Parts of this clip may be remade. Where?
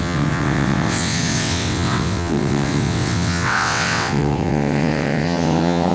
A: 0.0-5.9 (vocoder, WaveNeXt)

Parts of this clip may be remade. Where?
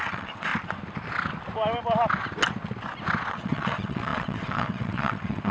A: 0.0-0.5 (vocoder, WaveNeXt); 3.3-5.5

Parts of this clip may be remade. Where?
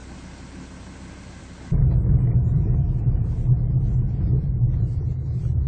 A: none